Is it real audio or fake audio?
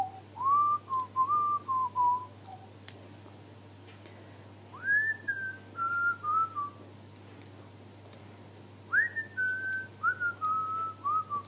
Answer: real